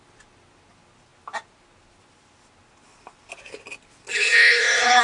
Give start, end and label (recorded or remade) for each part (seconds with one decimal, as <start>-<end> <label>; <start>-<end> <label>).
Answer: 0.0-4.1 recorded; 4.1-5.0 remade